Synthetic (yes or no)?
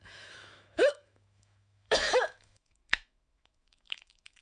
yes